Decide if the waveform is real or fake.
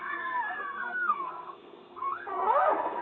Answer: fake